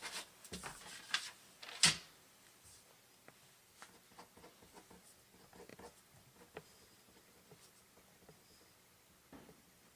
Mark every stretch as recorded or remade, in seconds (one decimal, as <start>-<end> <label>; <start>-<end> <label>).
0.0-10.0 recorded